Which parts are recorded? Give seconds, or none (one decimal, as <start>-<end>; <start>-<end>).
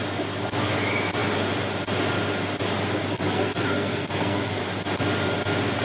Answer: 0.0-3.1; 4.6-5.8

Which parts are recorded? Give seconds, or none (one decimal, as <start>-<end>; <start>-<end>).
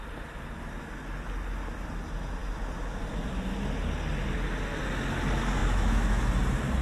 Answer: 0.0-5.6; 6.2-6.8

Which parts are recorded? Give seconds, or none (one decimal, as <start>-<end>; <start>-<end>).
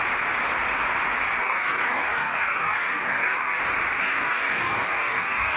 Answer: 0.0-1.4; 3.6-4.0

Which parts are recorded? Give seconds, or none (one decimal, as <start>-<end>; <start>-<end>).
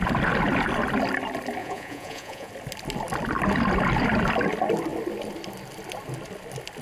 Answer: 0.0-1.6; 2.5-6.8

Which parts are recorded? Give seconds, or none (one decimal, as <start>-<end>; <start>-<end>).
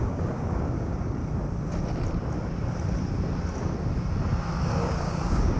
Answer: 1.2-4.6